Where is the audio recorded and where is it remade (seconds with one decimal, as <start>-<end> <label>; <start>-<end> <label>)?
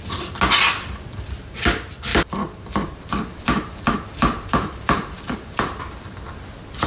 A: 0.0-2.1 recorded; 2.1-5.6 remade; 5.6-6.9 recorded